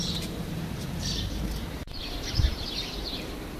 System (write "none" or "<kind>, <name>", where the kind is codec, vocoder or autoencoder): vocoder, BigVGAN v2